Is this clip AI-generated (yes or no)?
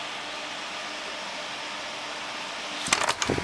no